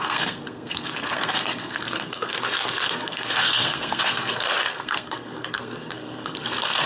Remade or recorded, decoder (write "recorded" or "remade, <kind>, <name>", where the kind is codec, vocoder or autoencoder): remade, codec, SNAC